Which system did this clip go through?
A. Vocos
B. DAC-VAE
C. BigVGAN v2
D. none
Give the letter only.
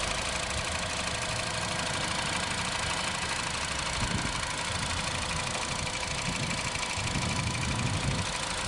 D